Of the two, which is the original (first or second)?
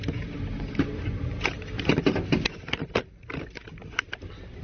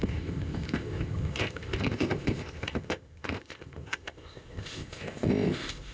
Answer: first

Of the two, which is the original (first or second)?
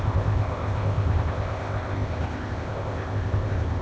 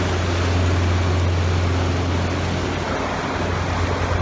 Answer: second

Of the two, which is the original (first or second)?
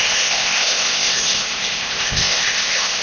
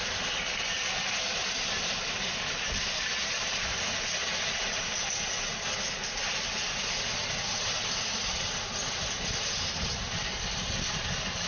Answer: second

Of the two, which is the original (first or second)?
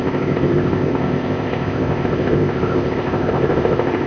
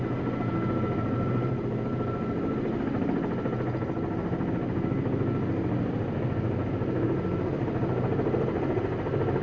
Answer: second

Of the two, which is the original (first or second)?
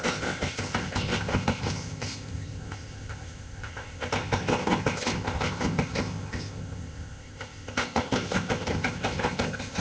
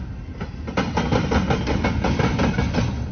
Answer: second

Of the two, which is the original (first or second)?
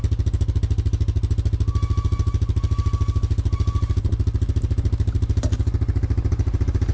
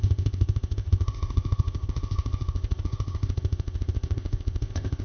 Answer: first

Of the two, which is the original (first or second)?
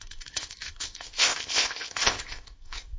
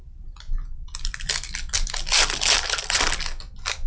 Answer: second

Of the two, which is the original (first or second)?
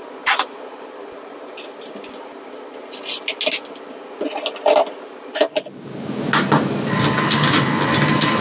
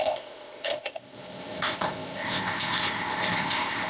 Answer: first